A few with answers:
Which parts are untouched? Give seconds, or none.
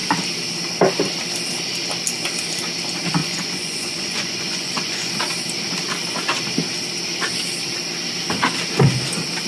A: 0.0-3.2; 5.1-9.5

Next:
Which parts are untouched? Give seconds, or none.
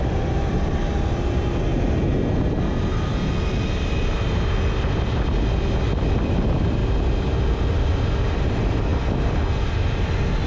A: 0.0-10.5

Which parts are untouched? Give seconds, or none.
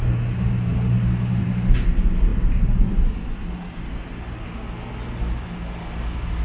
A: 0.0-6.4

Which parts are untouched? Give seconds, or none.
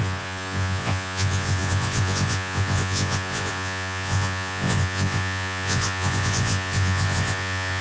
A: none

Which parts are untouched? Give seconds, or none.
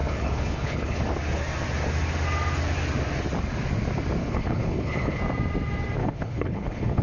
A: 1.0-4.2; 5.2-6.0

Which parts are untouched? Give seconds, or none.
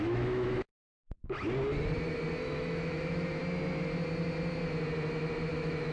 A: 0.7-2.4; 3.4-5.5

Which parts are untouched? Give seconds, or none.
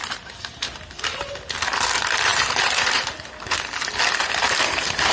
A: 0.0-5.1